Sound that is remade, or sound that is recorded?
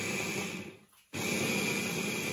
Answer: recorded